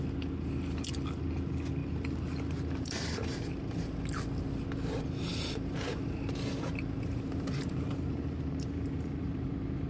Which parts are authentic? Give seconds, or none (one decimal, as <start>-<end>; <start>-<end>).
0.0-1.8; 4.0-5.3; 9.5-9.9